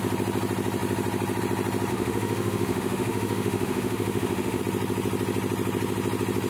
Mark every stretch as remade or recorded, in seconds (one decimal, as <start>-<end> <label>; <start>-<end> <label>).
0.0-1.9 recorded; 1.9-4.6 remade; 4.6-6.5 recorded